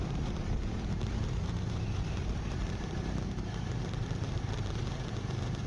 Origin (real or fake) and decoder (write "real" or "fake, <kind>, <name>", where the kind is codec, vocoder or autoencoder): fake, vocoder, BigVGAN v2